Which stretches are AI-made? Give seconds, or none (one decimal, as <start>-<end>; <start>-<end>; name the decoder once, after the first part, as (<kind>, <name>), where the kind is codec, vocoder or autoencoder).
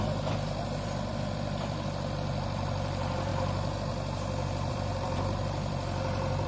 0.0-3.3 (vocoder, BigVGAN v2); 4.7-6.5